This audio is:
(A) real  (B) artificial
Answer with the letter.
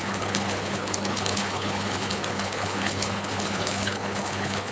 B